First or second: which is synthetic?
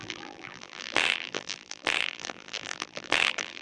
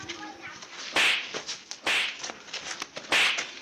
first